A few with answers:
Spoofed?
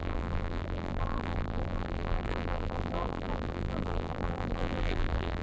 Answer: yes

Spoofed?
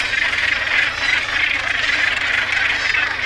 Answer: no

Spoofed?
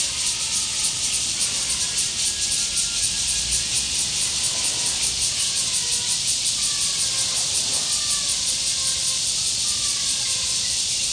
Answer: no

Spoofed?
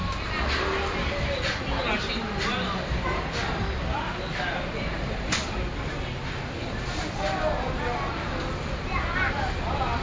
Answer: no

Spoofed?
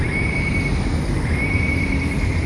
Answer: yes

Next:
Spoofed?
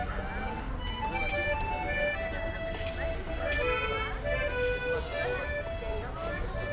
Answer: no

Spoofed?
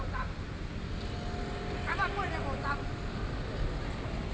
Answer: no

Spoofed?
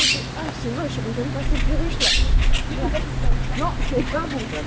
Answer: no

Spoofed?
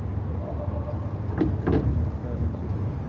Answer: no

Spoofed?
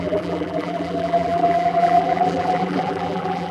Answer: yes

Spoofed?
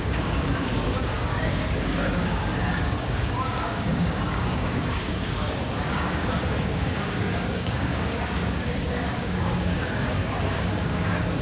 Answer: yes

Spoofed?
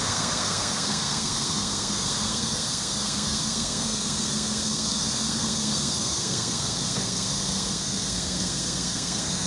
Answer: yes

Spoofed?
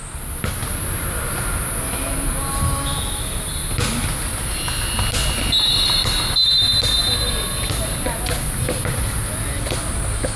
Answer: no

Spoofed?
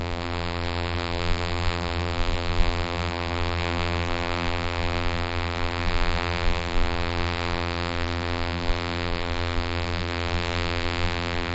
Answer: yes